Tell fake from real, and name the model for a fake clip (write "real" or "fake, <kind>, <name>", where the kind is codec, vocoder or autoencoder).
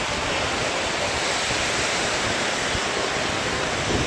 real